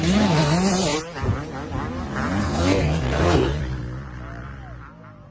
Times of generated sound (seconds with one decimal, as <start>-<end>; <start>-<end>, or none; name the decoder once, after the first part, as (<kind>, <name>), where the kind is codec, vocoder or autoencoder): 2.4-3.6 (codec, SNAC)